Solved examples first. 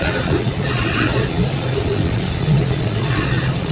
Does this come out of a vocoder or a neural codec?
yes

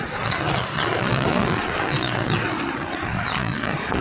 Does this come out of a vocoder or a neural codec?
yes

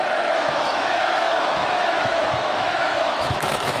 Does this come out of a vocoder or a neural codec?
yes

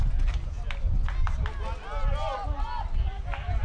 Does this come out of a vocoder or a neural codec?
no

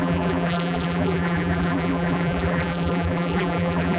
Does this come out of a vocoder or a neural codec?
yes